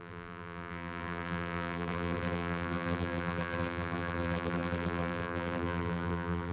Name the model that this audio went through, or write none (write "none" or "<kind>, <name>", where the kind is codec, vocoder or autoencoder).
vocoder, BigVGAN v2